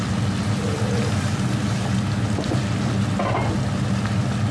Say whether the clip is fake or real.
real